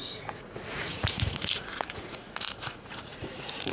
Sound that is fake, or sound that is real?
fake